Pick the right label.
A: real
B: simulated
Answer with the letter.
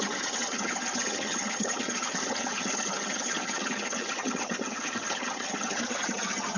B